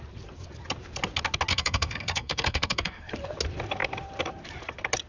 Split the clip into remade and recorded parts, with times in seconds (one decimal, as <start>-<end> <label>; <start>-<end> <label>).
0.0-1.5 recorded; 1.5-3.1 remade; 3.1-5.1 recorded